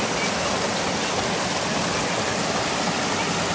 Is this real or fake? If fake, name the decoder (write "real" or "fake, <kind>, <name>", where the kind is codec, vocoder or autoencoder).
real